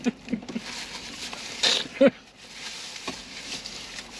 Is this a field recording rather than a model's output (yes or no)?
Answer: no